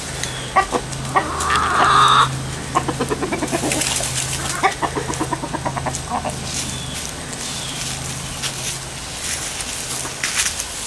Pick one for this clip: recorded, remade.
recorded